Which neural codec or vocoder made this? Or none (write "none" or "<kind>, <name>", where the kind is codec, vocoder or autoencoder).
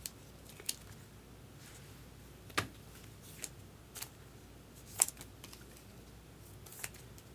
none